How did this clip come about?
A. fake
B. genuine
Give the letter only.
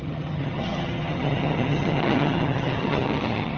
A